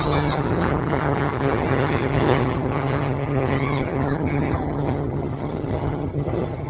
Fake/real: fake